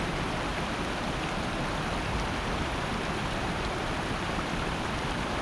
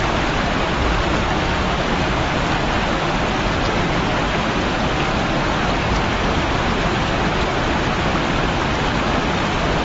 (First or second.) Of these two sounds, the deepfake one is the first